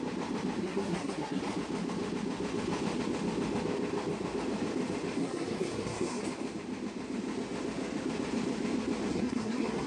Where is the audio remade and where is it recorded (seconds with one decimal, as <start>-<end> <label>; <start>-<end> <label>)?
0.0-0.6 recorded; 0.6-1.4 remade; 1.4-5.2 recorded; 5.2-6.2 remade; 6.2-9.1 recorded; 9.1-9.9 remade